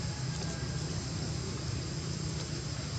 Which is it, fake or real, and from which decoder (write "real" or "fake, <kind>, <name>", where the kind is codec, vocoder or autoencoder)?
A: real